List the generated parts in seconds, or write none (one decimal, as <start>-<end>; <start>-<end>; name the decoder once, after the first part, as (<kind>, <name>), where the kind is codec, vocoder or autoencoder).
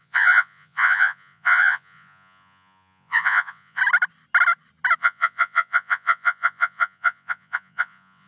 0.0-3.8 (vocoder, Vocos); 5.0-8.3